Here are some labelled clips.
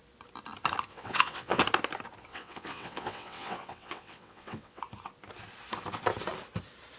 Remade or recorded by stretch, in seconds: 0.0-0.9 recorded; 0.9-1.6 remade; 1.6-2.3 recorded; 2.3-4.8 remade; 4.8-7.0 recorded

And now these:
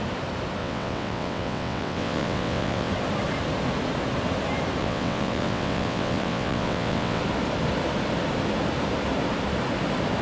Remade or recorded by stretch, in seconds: 0.0-0.6 recorded; 0.6-2.9 remade; 2.9-4.8 recorded; 4.8-7.2 remade; 7.2-10.2 recorded